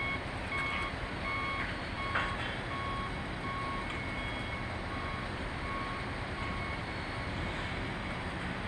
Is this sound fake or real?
real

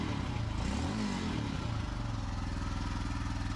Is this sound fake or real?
real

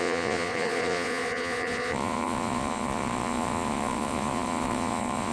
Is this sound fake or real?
fake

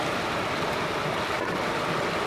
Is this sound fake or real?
real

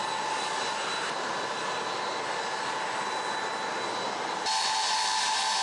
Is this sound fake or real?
real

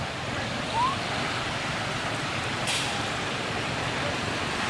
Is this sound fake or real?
real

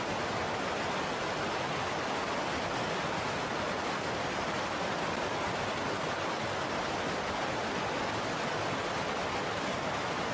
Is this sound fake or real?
real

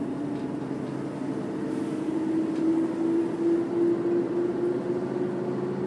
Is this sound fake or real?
real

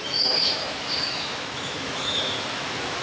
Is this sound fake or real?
fake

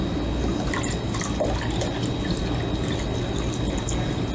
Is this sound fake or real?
real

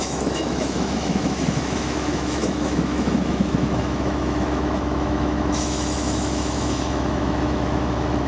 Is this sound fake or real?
fake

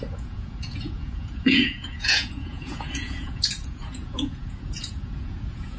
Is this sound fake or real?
fake